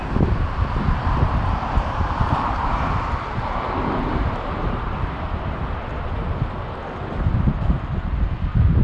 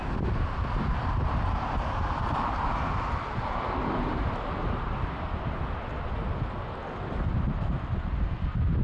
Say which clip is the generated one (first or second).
first